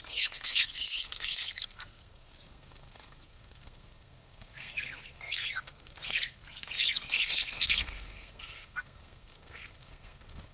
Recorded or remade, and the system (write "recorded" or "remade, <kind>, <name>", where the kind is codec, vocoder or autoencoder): remade, codec, SNAC